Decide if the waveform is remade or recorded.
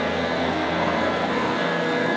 remade